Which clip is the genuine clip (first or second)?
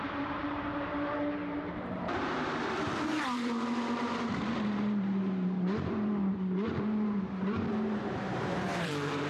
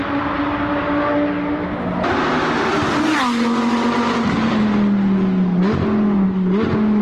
second